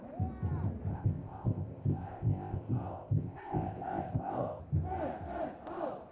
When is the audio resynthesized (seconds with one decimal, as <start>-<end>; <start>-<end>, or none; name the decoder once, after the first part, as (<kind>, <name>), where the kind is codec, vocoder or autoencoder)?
0.9-4.6 (codec, ZipCodec)